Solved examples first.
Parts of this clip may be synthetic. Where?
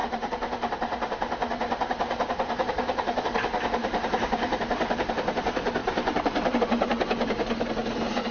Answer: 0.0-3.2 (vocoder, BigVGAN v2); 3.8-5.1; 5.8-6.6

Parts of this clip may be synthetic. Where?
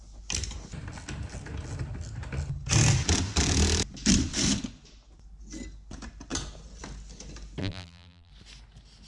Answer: 7.6-8.3 (vocoder, BigVGAN v2)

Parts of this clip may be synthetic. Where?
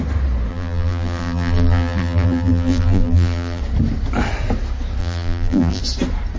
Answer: 0.5-3.6 (vocoder, BigVGAN v2); 5.0-5.8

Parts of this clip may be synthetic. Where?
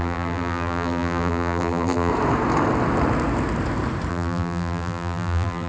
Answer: 0.0-2.1 (vocoder, BigVGAN v2); 4.1-5.7